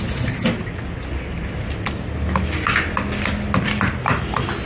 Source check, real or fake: real